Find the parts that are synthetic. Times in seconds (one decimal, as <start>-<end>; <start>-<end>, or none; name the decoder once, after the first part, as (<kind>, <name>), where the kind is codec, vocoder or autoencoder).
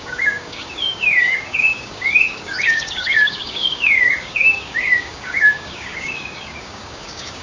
0.0-7.4 (codec, DAC)